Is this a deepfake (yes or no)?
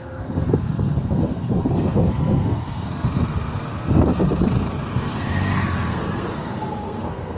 yes